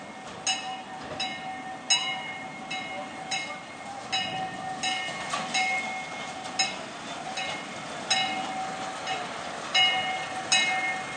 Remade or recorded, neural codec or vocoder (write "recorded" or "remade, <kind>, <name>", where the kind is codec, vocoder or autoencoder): recorded